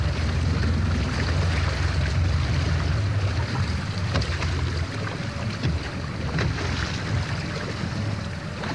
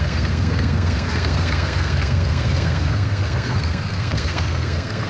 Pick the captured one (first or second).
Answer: first